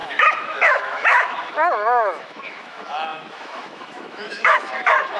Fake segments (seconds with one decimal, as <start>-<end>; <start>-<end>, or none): 0.0-5.2

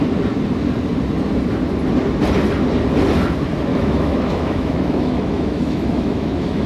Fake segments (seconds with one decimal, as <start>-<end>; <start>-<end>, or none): 3.7-6.7

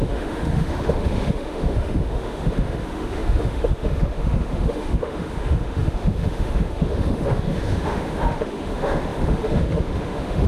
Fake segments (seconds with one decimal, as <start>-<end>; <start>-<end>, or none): 0.0-10.5

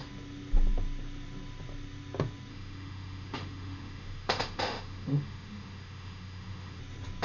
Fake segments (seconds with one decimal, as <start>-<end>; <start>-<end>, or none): 2.5-6.8

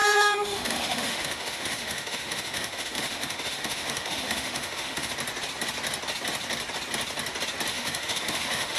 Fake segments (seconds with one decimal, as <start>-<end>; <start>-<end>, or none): 0.0-5.1; 7.7-8.8